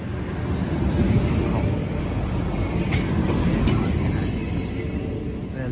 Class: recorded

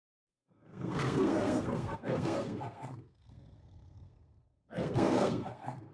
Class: remade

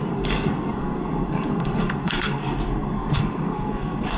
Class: remade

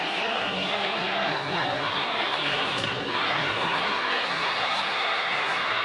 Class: remade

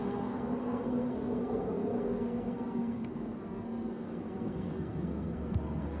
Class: remade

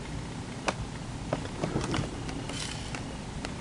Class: recorded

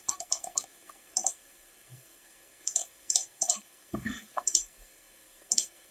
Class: remade